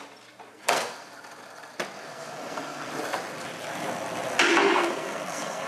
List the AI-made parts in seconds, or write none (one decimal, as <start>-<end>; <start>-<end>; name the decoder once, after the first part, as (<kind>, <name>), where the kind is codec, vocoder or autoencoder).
0.5-1.1 (codec, SNAC); 2.0-2.9; 4.5-5.7